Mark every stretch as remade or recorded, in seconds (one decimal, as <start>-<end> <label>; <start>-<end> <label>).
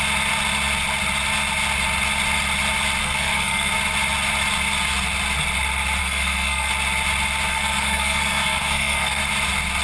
0.0-3.0 recorded; 3.0-3.7 remade; 3.7-6.0 recorded; 6.0-6.7 remade; 6.7-7.5 recorded; 7.5-9.2 remade; 9.2-9.8 recorded